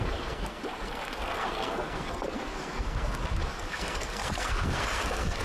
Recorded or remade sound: remade